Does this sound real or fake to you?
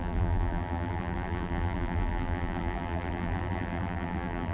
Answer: fake